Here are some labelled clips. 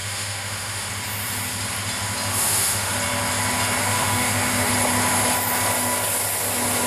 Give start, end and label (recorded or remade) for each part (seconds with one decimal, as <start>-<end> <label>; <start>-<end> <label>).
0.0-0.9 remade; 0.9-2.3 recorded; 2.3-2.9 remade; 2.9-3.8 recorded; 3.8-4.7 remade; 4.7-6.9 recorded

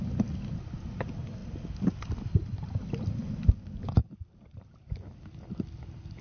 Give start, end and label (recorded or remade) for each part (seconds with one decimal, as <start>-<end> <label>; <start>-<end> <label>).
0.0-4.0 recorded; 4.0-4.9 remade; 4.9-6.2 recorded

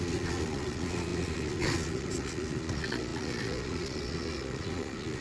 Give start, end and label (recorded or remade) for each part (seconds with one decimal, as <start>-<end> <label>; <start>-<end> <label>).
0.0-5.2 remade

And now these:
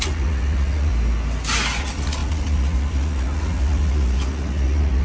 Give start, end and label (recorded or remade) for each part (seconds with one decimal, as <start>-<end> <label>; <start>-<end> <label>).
0.0-0.9 remade; 0.9-1.8 recorded; 1.8-5.0 remade

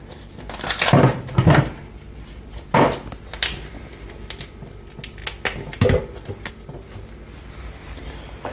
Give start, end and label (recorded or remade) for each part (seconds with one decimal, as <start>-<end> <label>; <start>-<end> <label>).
0.0-8.5 recorded

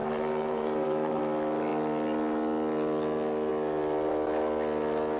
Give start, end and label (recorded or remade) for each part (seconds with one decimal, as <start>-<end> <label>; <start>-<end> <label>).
0.0-1.2 remade; 1.2-5.2 recorded

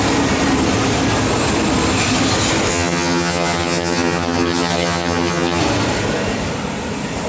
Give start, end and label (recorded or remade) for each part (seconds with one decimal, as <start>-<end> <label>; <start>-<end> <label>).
0.0-2.7 recorded; 2.7-5.6 remade; 5.6-7.3 recorded

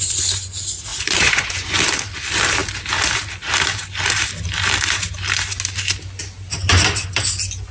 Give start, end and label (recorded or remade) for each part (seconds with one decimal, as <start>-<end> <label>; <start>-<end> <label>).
0.0-0.9 recorded; 0.9-1.8 remade; 1.8-7.7 recorded